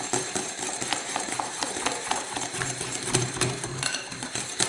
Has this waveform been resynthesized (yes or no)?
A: yes